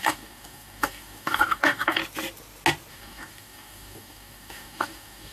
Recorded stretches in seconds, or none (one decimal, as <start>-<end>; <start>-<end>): 2.0-2.9